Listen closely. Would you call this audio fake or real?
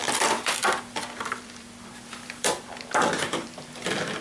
fake